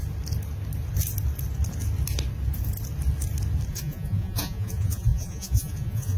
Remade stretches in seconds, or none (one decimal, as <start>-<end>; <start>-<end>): 3.7-6.2